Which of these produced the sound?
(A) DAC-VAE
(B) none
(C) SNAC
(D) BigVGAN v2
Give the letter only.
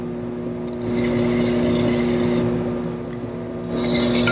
B